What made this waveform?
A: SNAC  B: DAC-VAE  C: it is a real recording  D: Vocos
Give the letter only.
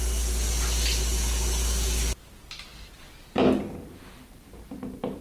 C